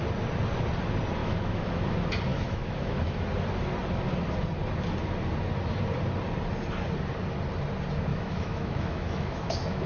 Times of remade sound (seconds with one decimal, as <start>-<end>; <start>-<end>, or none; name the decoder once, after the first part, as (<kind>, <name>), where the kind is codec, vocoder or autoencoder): 1.2-1.9 (autoencoder, DAC-VAE); 2.3-3.2; 8.1-9.9